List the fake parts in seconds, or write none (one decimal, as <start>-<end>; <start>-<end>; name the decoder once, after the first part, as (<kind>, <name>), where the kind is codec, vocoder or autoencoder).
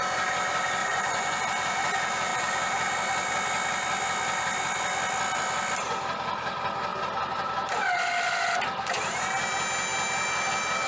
0.8-1.4 (vocoder, Vocos)